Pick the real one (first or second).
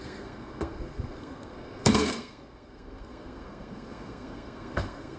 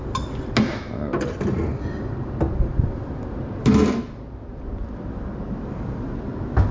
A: second